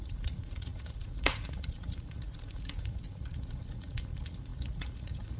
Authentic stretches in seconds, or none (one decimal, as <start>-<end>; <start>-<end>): none